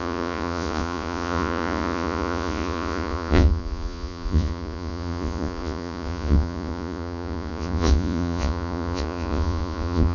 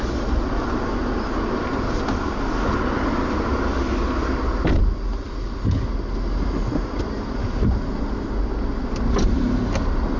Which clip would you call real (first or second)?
second